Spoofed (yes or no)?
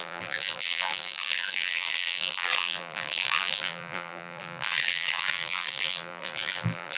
yes